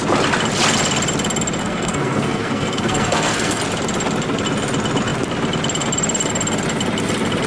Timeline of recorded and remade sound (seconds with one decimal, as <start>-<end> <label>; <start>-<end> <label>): 0.0-1.6 recorded; 1.6-3.6 remade; 3.6-7.5 recorded